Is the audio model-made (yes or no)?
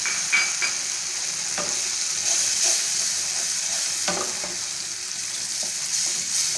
no